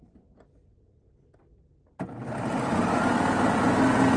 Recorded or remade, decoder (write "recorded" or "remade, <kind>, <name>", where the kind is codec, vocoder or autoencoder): recorded